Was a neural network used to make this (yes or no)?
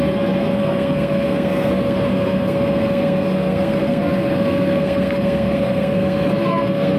yes